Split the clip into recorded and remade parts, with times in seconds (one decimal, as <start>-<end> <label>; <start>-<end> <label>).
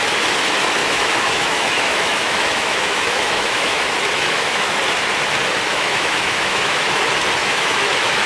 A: 0.0-0.8 recorded; 0.8-4.8 remade; 4.8-5.7 recorded; 5.7-7.0 remade; 7.0-7.4 recorded; 7.4-8.3 remade